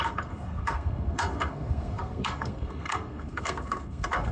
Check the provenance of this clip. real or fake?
fake